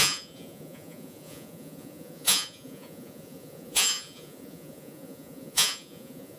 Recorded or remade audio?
remade